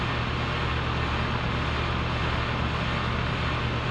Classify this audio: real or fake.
real